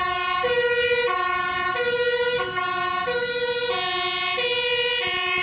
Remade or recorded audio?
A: recorded